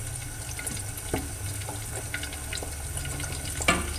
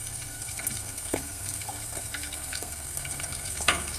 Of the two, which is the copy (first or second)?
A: second